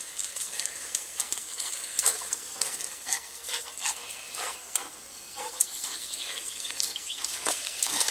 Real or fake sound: fake